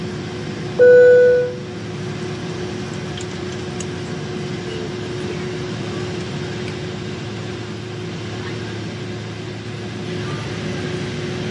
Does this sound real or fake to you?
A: real